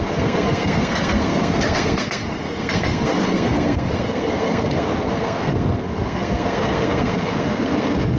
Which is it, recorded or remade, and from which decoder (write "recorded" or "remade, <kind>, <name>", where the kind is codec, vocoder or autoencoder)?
remade, codec, SNAC